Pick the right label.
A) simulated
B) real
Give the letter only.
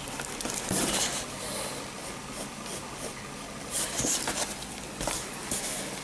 B